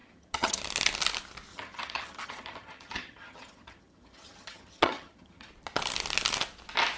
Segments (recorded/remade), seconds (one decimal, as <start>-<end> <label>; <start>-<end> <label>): 0.0-0.6 remade; 0.6-1.5 recorded; 1.5-5.5 remade; 5.5-7.0 recorded